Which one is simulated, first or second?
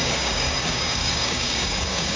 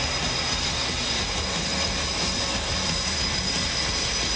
first